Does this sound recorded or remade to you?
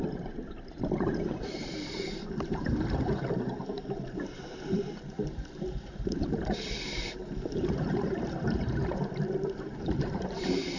remade